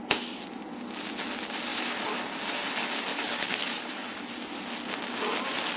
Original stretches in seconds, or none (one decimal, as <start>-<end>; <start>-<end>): 0.0-3.1; 3.9-5.8